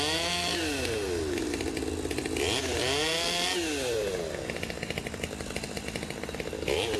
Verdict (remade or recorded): recorded